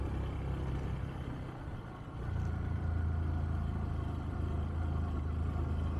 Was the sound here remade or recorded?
recorded